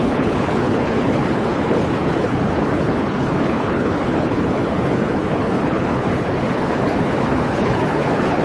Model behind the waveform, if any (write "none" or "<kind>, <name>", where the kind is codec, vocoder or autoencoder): codec, HILCodec